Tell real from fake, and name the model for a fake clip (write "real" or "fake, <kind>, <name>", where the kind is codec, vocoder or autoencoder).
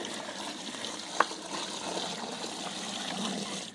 real